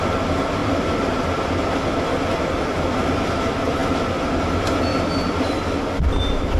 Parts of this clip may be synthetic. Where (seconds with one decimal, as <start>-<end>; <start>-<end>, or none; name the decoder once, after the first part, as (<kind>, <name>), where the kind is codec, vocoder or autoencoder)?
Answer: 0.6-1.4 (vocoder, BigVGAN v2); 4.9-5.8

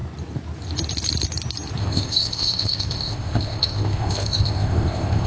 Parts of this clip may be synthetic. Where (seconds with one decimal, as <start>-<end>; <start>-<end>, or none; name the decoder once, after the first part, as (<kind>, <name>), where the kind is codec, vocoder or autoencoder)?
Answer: 1.8-5.3 (codec, ZipCodec)

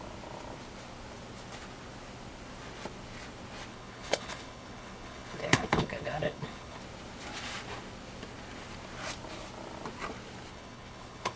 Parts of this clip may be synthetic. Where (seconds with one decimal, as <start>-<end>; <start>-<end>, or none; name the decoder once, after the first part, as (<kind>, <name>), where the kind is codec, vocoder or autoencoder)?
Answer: 3.7-6.8 (codec, HILCodec); 10.5-11.4

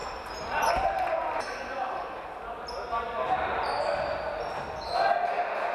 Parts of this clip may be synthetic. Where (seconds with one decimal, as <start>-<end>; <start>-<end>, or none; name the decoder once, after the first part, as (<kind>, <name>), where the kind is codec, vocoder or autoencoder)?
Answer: 0.0-0.7 (vocoder, BigVGAN v2)